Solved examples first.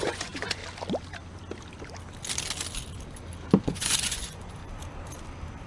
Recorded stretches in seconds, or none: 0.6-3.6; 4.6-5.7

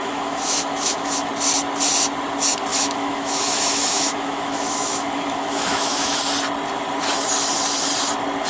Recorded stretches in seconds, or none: 1.3-2.7; 6.2-8.5

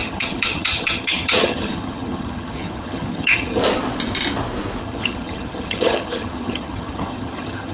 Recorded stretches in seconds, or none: 3.6-4.8

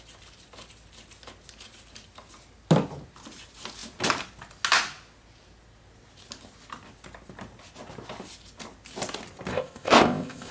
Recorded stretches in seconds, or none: 0.0-9.5

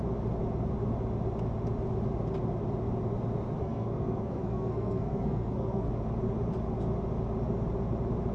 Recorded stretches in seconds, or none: 0.0-3.6; 5.9-8.3

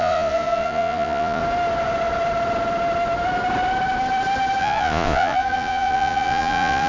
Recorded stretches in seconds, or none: 1.4-4.6

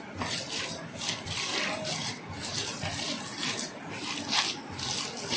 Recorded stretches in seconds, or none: 0.0-5.4